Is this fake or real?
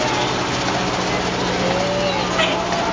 real